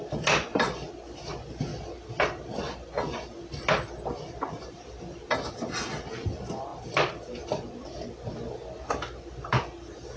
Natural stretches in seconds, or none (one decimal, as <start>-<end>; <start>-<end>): 0.0-10.2